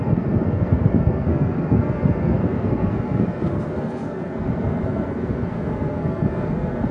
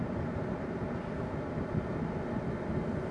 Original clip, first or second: second